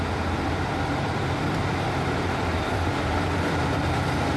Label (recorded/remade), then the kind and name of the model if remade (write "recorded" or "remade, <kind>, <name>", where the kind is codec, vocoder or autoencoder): remade, vocoder, BigVGAN v2